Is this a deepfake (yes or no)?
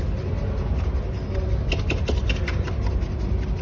no